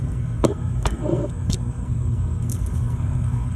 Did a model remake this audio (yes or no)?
yes